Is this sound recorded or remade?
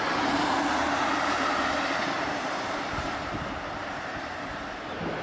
remade